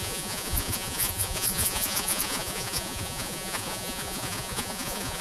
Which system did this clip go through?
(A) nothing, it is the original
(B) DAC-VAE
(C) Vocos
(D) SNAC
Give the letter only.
C